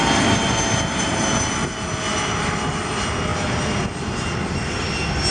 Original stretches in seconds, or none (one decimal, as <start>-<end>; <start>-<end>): 0.0-5.3